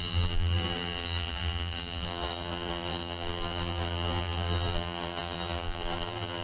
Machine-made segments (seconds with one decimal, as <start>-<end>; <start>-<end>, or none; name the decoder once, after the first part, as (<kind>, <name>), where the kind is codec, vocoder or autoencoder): 0.0-6.4 (vocoder, BigVGAN v2)